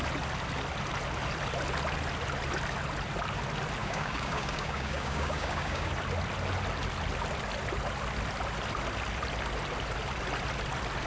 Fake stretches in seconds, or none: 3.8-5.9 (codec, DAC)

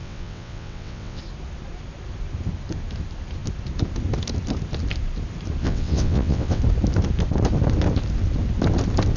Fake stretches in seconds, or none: 0.0-1.2 (vocoder, WaveNeXt); 5.6-6.6